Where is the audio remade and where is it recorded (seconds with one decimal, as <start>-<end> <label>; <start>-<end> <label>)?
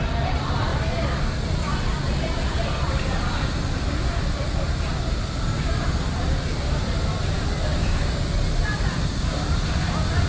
0.0-7.7 recorded; 7.7-8.3 remade; 8.3-10.3 recorded